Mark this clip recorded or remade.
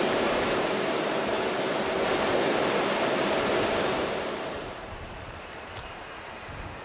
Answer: remade